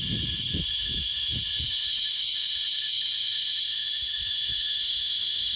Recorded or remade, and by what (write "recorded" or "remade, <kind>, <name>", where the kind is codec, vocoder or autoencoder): remade, autoencoder, DAC-VAE